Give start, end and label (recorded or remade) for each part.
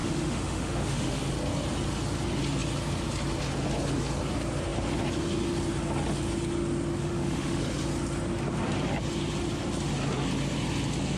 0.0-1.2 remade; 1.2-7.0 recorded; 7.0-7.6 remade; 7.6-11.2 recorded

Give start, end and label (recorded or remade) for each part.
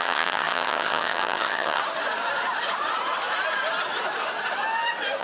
0.0-1.8 remade; 1.8-5.2 recorded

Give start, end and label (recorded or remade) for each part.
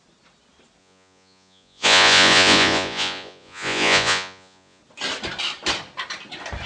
0.0-0.8 recorded; 0.8-4.8 remade; 4.8-6.7 recorded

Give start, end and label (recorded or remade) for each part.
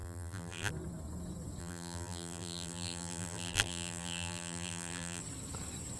0.0-0.7 remade; 0.7-1.6 recorded; 1.6-5.2 remade; 5.2-6.0 recorded